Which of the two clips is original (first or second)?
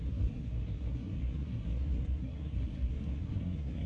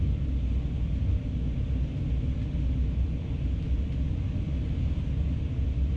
second